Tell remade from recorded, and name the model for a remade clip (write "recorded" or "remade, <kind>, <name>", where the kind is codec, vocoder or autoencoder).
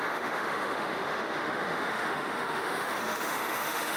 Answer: remade, autoencoder, DAC-VAE